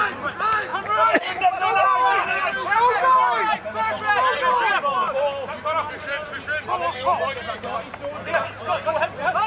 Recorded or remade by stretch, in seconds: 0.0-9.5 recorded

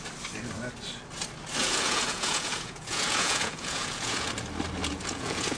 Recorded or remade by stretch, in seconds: 0.0-1.6 recorded; 1.6-4.3 remade; 4.3-4.8 recorded; 4.8-5.6 remade